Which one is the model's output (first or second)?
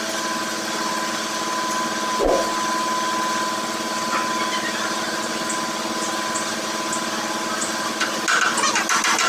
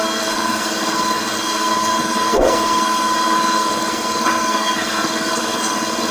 second